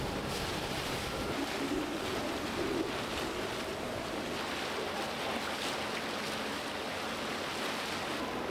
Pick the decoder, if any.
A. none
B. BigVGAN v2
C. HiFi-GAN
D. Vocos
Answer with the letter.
A